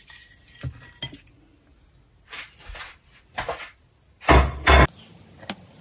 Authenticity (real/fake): real